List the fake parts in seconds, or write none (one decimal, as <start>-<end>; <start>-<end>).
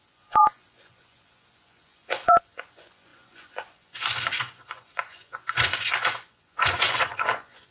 0.0-7.7